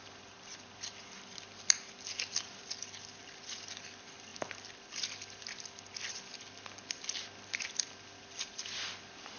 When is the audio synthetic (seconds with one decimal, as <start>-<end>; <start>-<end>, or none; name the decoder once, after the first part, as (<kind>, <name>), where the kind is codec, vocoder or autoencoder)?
none